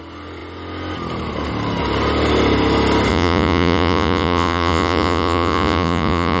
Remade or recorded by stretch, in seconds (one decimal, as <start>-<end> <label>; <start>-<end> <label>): 0.0-3.1 recorded; 3.1-6.4 remade